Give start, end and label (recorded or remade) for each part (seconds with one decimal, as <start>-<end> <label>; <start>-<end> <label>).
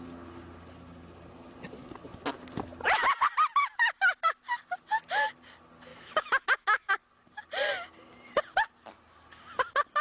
0.0-5.9 recorded; 5.9-6.9 remade; 6.9-10.0 recorded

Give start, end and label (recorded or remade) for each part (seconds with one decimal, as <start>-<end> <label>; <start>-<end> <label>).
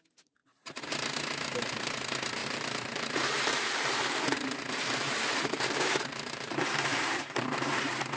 0.0-0.4 recorded; 0.4-2.0 remade; 2.0-2.4 recorded; 2.4-7.2 remade; 7.2-8.2 recorded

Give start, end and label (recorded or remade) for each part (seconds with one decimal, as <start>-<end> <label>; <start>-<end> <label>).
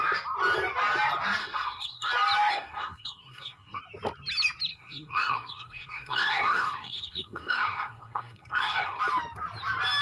0.0-1.4 recorded; 1.4-2.1 remade; 2.1-2.5 recorded; 2.5-3.8 remade; 3.8-4.7 recorded; 4.7-9.0 remade; 9.0-10.0 recorded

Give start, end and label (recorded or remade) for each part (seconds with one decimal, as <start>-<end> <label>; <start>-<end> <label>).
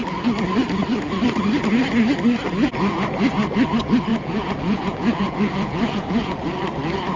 0.0-4.1 recorded; 4.1-6.5 remade; 6.5-7.2 recorded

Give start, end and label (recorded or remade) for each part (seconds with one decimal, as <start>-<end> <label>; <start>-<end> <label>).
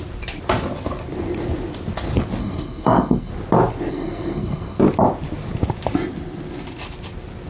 0.0-2.4 recorded; 2.4-3.3 remade; 3.3-3.9 recorded; 3.9-4.8 remade; 4.8-7.5 recorded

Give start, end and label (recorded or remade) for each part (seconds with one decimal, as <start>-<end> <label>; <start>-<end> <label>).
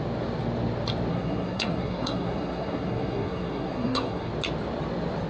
0.0-1.1 recorded; 1.1-4.3 remade; 4.3-5.3 recorded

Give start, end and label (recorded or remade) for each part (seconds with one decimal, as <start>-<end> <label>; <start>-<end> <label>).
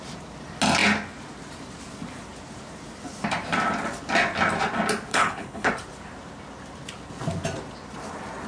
0.0-5.1 recorded; 5.1-5.7 remade; 5.7-8.5 recorded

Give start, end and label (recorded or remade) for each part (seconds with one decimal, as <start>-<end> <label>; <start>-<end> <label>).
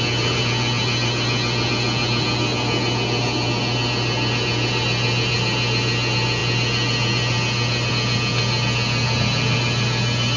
0.0-10.4 recorded